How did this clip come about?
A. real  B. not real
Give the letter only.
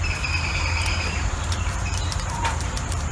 B